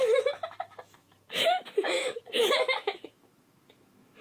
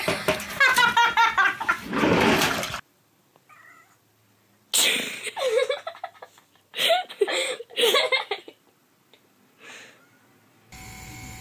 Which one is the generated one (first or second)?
first